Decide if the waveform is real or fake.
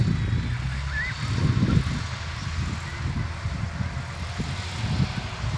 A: real